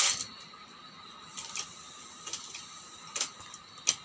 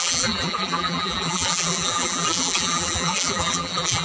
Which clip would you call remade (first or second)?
second